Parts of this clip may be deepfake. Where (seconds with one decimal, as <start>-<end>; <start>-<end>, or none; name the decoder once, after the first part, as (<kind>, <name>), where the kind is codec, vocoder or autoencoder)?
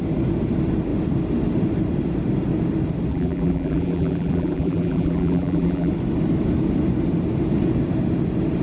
3.1-5.9 (vocoder, BigVGAN v2)